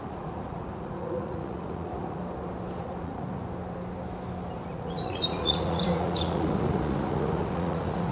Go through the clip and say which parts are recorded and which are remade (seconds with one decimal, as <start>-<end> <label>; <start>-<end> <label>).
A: 0.0-2.2 remade; 2.2-2.8 recorded; 2.8-3.4 remade; 3.4-4.7 recorded; 4.7-8.1 remade